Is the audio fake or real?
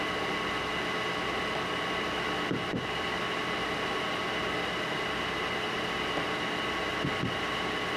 real